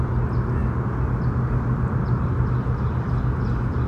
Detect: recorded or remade recorded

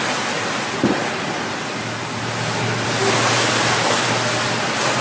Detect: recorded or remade recorded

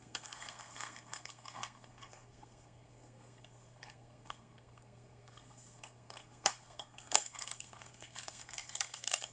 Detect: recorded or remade remade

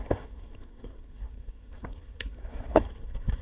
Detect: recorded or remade remade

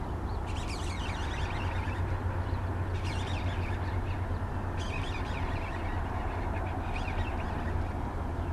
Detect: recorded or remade recorded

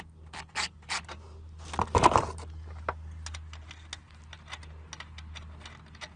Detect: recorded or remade recorded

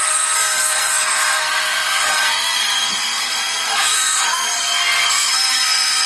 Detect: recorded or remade remade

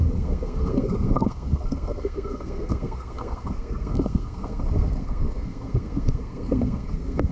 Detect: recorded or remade remade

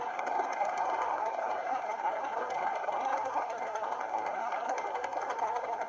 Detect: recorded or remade remade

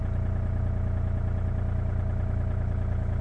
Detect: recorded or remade recorded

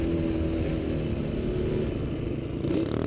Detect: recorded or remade recorded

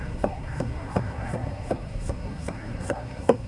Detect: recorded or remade remade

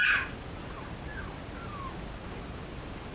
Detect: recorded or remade recorded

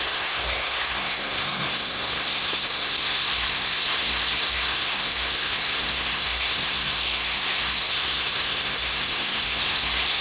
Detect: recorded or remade remade